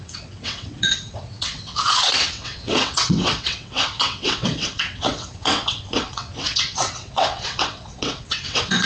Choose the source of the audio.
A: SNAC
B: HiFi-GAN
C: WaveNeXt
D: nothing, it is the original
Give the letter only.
C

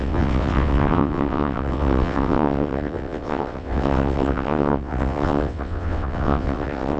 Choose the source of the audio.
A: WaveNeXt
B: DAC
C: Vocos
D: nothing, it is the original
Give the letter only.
A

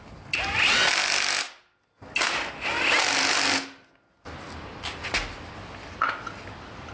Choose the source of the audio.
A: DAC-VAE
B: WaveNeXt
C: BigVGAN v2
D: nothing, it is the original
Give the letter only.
D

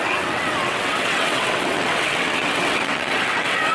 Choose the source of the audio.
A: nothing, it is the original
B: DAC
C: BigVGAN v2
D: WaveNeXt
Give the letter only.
D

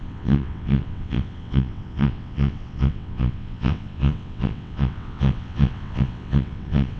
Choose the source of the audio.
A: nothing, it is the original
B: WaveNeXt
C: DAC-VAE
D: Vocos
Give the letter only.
B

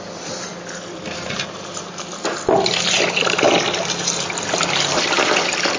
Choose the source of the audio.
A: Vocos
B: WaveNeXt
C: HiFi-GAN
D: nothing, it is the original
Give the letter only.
D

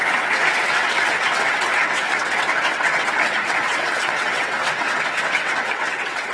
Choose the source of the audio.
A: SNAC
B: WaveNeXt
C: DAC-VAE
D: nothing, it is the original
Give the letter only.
B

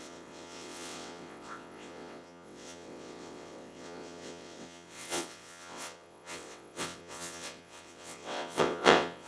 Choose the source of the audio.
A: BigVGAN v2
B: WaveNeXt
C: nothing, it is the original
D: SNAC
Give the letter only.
B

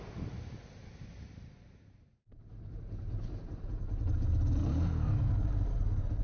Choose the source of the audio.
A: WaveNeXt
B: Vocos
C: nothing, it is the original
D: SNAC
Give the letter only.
C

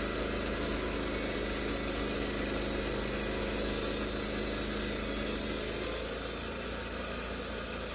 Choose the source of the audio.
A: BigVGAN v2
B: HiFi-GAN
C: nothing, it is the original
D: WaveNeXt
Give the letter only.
C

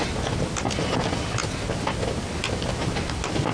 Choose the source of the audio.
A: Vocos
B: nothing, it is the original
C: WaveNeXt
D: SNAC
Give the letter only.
B